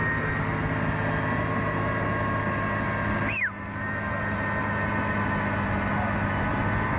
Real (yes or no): yes